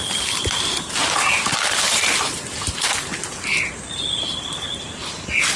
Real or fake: real